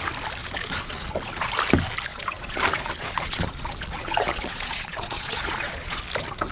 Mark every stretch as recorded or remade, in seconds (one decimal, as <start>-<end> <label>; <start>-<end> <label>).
0.0-0.4 recorded; 0.4-1.5 remade; 1.5-2.1 recorded; 2.1-6.0 remade; 6.0-6.5 recorded